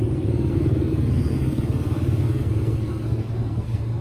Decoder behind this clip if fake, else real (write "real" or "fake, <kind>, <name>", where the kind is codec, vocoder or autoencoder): fake, codec, SNAC